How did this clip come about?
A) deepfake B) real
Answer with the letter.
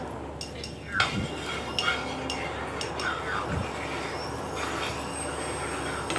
B